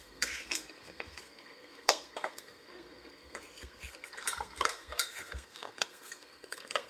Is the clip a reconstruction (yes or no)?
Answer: yes